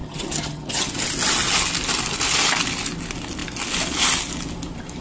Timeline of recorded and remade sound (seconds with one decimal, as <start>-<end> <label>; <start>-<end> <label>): 0.0-0.9 remade; 0.9-5.0 recorded